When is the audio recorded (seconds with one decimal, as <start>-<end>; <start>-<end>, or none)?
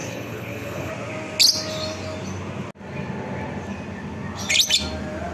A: 0.9-5.3